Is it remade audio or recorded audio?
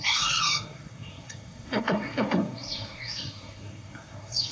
remade